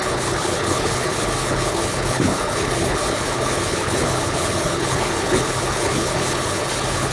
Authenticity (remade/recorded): remade